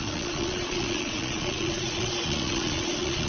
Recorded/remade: remade